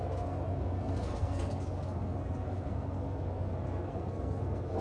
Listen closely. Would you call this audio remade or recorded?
remade